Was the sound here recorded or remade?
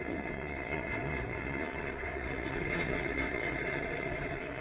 remade